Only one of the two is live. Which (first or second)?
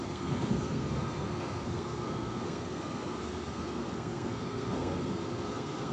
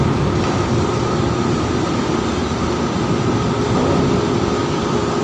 second